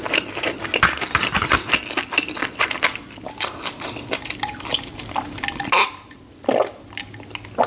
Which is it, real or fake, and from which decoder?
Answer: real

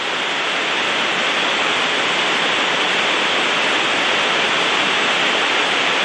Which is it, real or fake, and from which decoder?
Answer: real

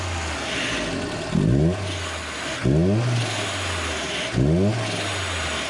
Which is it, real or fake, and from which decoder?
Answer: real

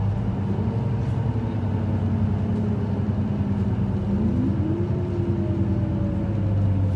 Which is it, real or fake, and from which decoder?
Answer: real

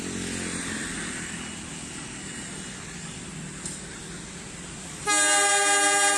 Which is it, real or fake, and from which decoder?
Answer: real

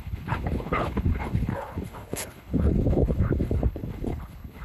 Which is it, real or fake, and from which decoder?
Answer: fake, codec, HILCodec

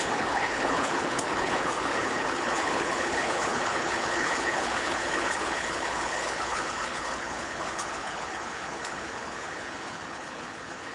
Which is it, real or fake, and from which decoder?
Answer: fake, codec, HILCodec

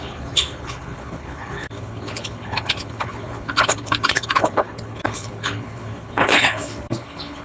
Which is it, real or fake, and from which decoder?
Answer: fake, codec, HILCodec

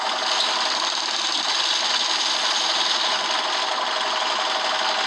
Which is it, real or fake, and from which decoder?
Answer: real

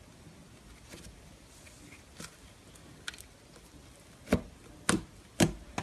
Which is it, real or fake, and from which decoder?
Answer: real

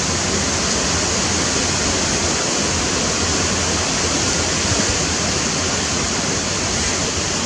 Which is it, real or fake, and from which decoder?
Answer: real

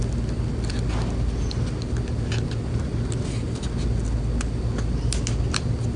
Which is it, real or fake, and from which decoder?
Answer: real